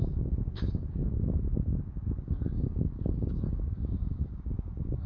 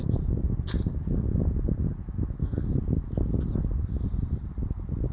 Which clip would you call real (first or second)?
second